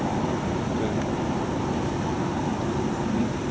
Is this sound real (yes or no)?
yes